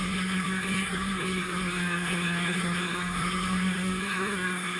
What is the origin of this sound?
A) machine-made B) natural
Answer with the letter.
A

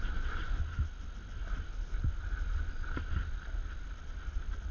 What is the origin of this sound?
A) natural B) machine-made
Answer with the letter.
A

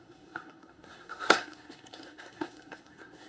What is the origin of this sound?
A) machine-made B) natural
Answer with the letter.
A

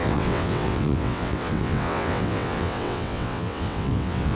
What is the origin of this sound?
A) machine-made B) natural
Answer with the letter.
A